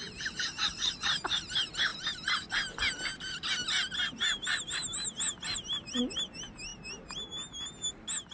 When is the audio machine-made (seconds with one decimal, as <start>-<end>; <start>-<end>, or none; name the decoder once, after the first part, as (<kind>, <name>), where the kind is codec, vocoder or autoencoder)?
none